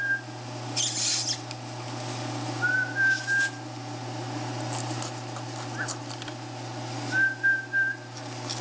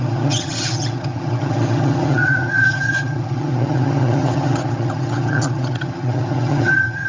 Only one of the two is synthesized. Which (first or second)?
second